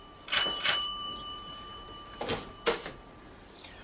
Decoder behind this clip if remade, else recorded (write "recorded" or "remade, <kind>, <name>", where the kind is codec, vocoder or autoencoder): remade, vocoder, BigVGAN v2